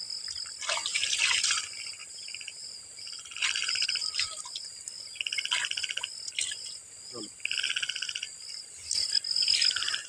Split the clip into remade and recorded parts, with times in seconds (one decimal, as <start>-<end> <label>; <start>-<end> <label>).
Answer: 0.0-0.9 recorded; 0.9-1.6 remade; 1.6-2.0 recorded; 2.0-4.4 remade; 4.4-10.1 recorded